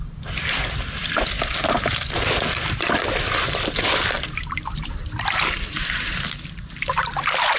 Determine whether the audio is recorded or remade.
remade